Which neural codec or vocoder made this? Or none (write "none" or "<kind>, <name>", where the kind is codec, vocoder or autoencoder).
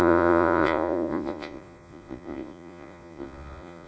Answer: vocoder, Vocos